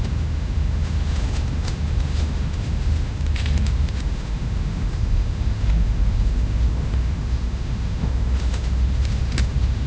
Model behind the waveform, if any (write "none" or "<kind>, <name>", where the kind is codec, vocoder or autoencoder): autoencoder, DAC-VAE